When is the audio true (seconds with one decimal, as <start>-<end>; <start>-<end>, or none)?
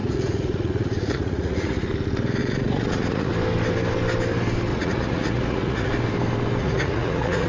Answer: 1.9-2.4; 3.3-4.7; 5.9-6.6